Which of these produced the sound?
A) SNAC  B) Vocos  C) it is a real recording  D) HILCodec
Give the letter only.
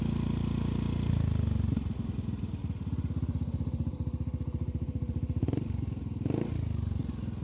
C